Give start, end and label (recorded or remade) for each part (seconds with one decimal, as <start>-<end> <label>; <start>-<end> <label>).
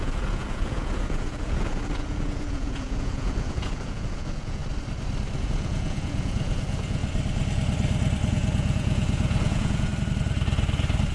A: 0.0-4.6 remade; 4.6-5.4 recorded; 5.4-7.0 remade; 7.0-8.3 recorded; 8.3-9.9 remade; 9.9-11.1 recorded